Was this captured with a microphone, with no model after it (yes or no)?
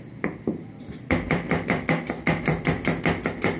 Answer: no